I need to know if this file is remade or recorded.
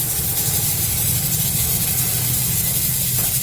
recorded